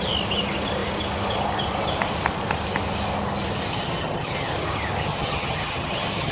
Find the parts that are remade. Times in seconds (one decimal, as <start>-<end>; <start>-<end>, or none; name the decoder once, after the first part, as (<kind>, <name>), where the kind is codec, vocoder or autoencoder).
3.7-4.5 (vocoder, HiFi-GAN); 5.1-6.3